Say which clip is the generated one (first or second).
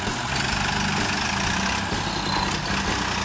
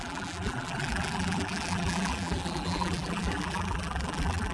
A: second